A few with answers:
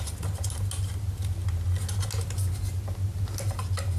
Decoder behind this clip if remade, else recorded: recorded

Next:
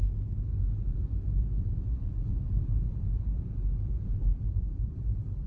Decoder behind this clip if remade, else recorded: remade, vocoder, BigVGAN v2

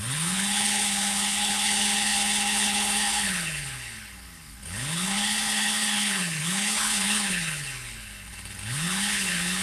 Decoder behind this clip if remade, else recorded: remade, codec, HILCodec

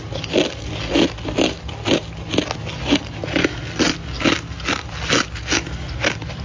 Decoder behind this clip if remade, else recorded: recorded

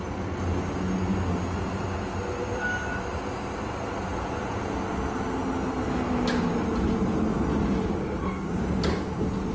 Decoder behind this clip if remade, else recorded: recorded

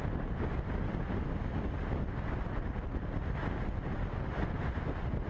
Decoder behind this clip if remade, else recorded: recorded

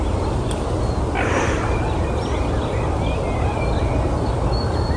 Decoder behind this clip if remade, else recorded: recorded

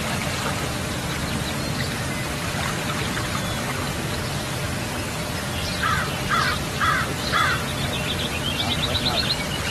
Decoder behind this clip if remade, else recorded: recorded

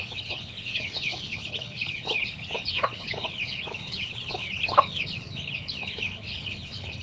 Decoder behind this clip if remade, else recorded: remade, codec, HILCodec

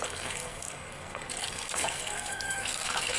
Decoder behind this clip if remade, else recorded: remade, codec, SNAC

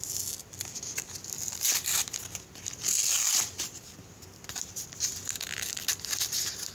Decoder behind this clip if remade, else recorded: recorded